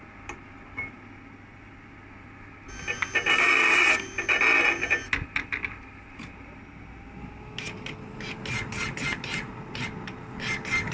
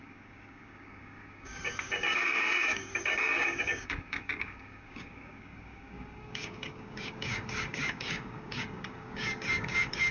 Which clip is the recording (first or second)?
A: first